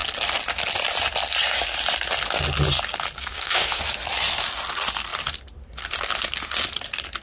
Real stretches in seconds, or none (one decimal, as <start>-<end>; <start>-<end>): 0.0-3.3; 3.8-7.2